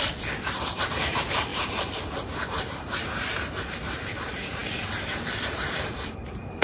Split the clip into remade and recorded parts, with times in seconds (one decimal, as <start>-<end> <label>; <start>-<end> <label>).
0.0-6.6 remade